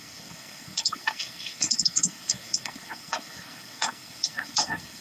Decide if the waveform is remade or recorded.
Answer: remade